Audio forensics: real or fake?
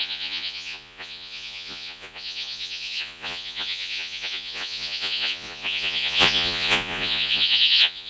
fake